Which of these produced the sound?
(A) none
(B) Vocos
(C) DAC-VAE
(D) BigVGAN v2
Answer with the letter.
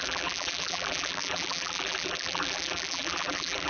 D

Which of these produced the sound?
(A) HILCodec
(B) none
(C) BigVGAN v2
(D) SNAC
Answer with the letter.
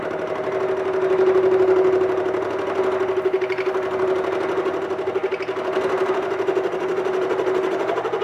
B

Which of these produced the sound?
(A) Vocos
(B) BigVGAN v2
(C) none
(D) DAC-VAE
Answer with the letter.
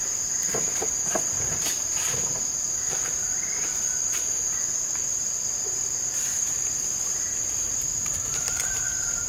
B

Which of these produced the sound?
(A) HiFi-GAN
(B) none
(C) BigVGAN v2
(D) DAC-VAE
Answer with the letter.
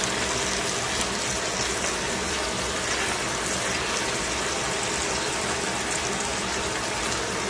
B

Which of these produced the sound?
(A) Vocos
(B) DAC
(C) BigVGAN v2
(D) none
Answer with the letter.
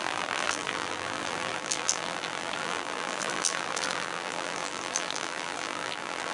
C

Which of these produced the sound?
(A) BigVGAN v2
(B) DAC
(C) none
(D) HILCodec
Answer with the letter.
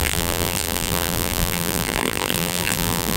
A